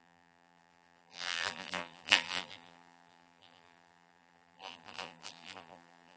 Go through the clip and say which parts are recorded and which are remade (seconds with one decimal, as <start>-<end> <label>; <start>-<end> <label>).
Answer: 0.0-6.2 remade